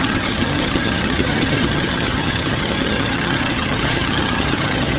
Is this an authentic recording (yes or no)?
no